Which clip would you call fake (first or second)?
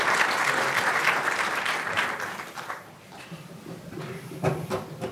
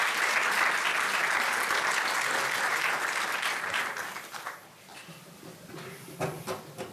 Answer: first